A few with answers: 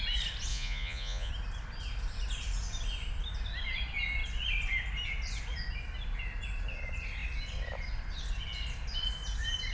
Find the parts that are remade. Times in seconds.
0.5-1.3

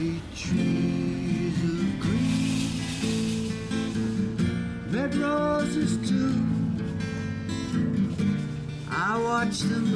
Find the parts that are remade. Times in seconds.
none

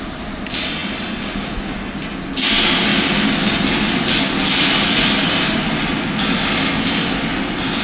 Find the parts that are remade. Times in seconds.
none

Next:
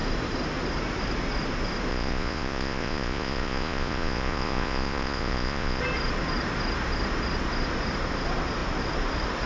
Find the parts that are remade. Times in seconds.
1.9-5.8

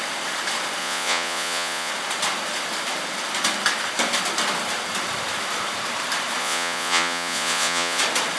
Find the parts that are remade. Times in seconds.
0.8-1.9; 6.4-8.0